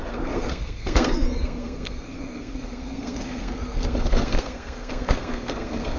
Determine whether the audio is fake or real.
fake